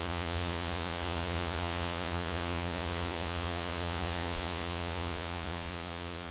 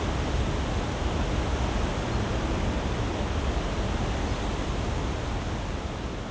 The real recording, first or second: second